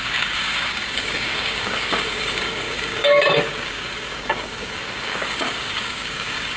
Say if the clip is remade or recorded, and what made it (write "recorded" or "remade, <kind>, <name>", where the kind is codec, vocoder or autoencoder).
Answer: remade, codec, DAC